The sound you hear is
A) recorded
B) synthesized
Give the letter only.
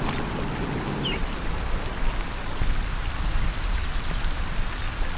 A